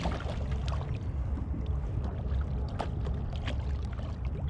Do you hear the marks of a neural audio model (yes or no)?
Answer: no